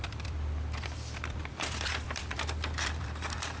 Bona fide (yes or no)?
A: no